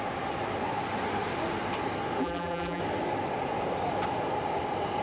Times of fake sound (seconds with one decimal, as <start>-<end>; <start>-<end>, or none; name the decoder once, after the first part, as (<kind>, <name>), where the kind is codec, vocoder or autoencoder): 2.2-2.8 (vocoder, BigVGAN v2)